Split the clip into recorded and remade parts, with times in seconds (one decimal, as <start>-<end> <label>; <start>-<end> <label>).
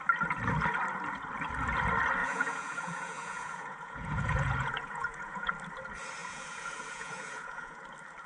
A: 0.0-2.2 recorded; 2.2-5.5 remade; 5.5-6.2 recorded; 6.2-7.8 remade; 7.8-8.3 recorded